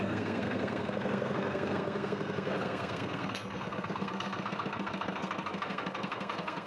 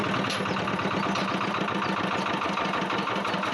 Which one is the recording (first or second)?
second